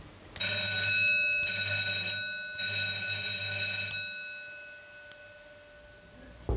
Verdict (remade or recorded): recorded